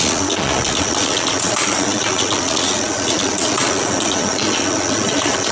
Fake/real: fake